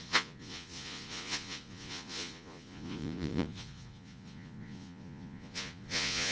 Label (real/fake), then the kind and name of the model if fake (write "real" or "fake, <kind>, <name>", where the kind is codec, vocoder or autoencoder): fake, vocoder, Vocos